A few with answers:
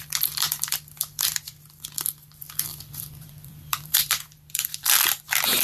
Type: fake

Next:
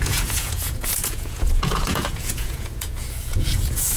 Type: fake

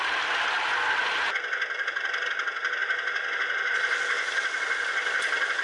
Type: real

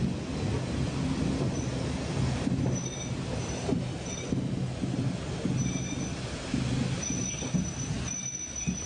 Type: real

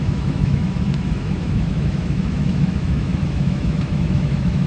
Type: fake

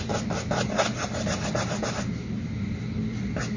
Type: real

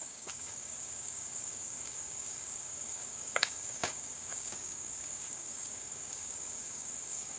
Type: fake